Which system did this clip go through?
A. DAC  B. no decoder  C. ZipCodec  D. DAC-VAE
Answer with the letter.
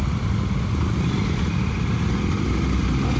B